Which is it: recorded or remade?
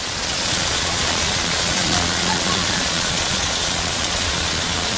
remade